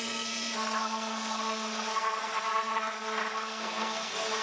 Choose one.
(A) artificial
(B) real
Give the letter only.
A